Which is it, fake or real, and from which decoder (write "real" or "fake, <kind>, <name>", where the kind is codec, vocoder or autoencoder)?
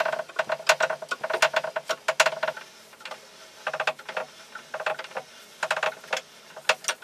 real